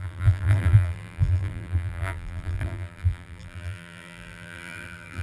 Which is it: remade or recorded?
remade